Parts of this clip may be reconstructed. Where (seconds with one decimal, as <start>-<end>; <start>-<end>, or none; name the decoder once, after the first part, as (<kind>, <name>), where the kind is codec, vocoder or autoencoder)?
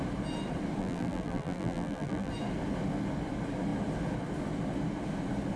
0.8-2.3 (vocoder, BigVGAN v2)